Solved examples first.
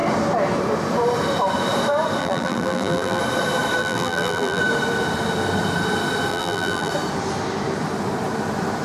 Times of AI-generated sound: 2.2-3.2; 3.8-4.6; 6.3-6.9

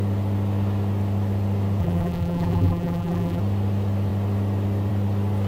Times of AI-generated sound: 1.8-3.4

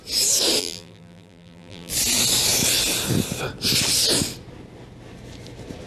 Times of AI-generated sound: 0.6-1.9

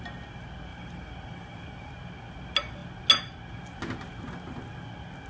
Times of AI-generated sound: 0.7-1.9

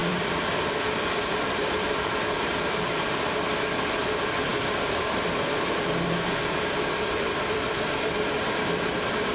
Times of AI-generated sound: 0.0-3.1; 4.5-9.3

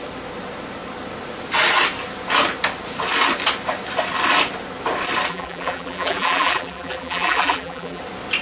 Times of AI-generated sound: 5.3-8.0

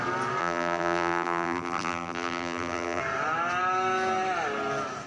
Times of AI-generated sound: 0.4-3.0